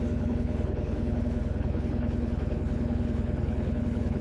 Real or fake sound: fake